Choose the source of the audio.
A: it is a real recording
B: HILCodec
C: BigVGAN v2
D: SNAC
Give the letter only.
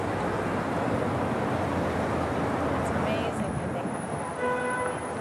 A